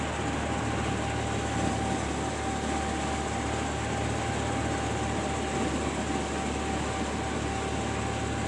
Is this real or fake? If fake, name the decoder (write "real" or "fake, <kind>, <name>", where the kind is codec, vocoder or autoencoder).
real